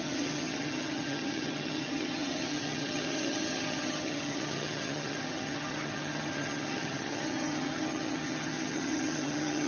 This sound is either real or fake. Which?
fake